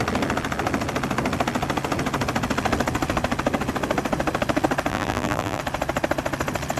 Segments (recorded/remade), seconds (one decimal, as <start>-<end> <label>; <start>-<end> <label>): 0.0-4.9 recorded; 4.9-5.6 remade; 5.6-6.8 recorded

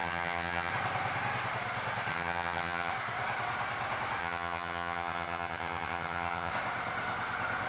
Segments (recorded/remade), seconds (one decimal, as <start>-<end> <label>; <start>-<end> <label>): 0.0-0.7 remade; 0.7-2.1 recorded; 2.1-2.9 remade; 2.9-4.2 recorded; 4.2-6.5 remade; 6.5-7.7 recorded

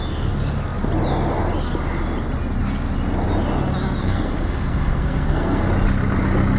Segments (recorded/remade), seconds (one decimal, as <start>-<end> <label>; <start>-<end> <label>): 0.0-4.0 recorded; 4.0-5.7 remade; 5.7-6.6 recorded

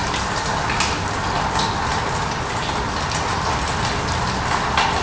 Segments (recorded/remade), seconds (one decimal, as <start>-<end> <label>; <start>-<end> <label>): 0.0-5.0 recorded

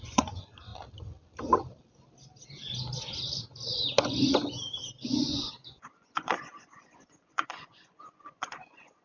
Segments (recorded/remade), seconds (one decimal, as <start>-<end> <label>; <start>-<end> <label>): 0.0-0.7 remade; 0.7-5.0 recorded; 5.0-9.0 remade